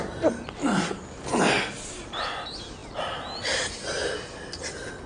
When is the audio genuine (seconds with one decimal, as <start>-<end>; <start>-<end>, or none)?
0.0-5.1